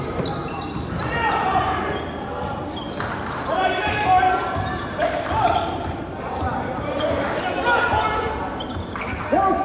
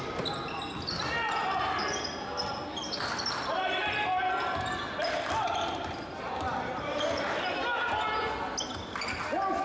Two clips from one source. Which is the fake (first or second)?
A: first